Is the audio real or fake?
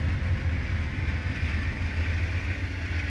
real